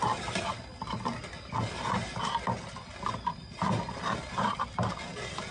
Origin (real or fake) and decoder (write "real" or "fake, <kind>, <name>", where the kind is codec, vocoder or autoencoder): real